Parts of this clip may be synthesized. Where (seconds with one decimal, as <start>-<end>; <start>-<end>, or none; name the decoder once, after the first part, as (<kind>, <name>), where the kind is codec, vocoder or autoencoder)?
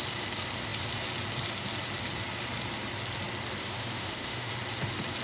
3.6-4.5 (autoencoder, DAC-VAE)